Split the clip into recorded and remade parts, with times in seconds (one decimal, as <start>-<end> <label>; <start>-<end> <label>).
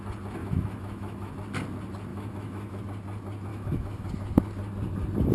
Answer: 0.0-0.4 recorded; 0.4-1.3 remade; 1.3-2.1 recorded; 2.1-2.8 remade; 2.8-3.5 recorded; 3.5-4.1 remade; 4.1-5.3 recorded